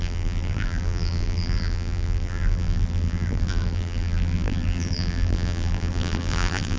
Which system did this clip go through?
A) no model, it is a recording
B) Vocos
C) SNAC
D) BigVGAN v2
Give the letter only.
D